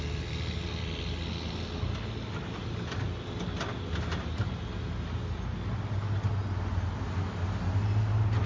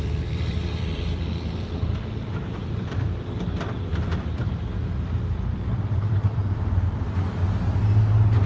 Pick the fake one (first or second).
second